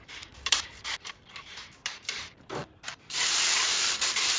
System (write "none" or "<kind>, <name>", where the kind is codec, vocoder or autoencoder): vocoder, BigVGAN v2